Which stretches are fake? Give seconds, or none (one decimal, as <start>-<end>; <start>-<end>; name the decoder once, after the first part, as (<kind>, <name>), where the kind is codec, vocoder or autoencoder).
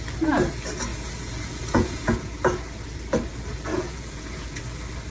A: 0.9-2.3 (vocoder, Vocos); 3.7-4.6